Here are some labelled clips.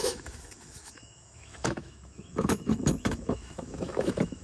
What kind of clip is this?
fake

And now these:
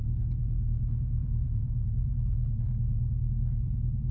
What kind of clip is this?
fake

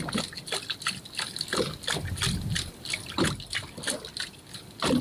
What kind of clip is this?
real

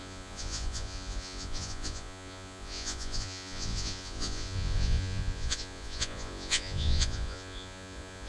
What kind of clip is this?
fake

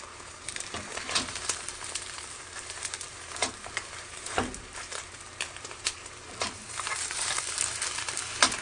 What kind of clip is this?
fake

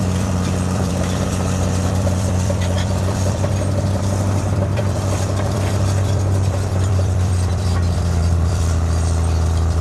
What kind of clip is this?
fake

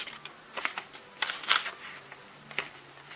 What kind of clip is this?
real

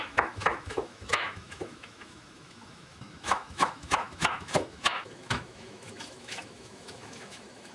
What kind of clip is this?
fake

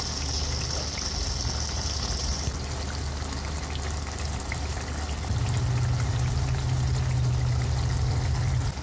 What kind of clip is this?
real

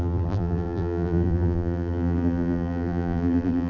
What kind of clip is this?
fake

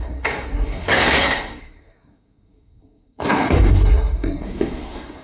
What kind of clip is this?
fake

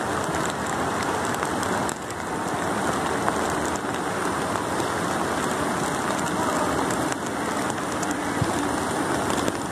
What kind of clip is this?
real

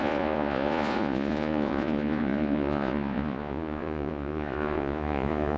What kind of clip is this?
fake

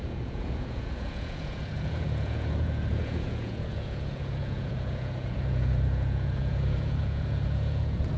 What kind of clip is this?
fake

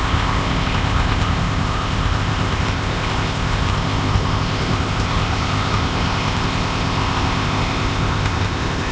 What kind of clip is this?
fake